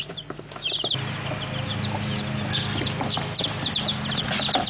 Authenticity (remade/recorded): recorded